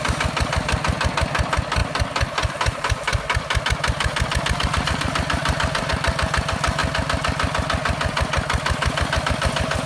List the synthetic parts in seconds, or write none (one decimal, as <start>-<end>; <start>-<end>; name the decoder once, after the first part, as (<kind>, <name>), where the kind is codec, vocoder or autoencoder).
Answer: 5.4-5.9 (vocoder, BigVGAN v2)